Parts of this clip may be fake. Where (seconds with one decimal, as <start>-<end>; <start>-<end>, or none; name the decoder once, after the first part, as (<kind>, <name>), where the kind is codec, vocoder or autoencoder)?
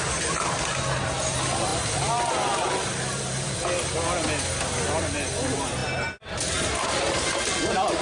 none